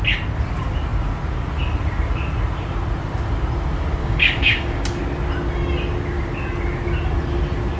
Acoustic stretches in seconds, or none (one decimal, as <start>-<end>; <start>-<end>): 0.0-4.0; 5.0-7.8